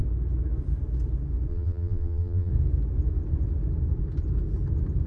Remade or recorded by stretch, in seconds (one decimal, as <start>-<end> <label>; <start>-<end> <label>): 0.0-1.5 recorded; 1.5-2.5 remade; 2.5-5.1 recorded